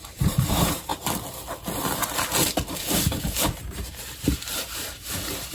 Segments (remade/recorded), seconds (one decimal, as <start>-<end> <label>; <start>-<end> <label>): 0.0-0.9 remade; 0.9-3.6 recorded; 3.6-5.5 remade